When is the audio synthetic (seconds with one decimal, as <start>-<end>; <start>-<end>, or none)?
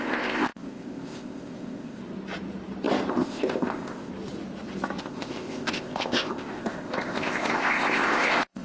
0.0-2.0; 3.1-4.1; 5.0-8.6